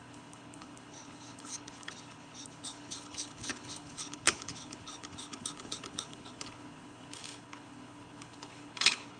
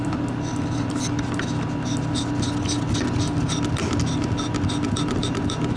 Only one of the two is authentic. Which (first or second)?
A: second